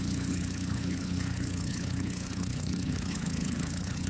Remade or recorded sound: remade